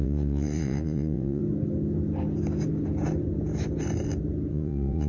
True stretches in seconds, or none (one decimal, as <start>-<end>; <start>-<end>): 1.4-4.5